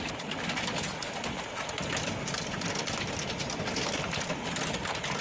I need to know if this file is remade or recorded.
recorded